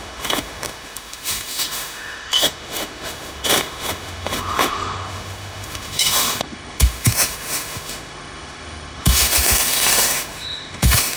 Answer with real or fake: fake